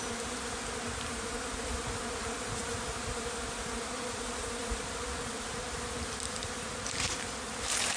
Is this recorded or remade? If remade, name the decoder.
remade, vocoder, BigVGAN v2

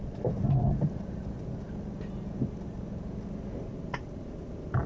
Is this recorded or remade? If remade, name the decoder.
recorded